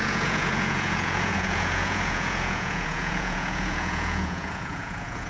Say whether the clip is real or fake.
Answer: fake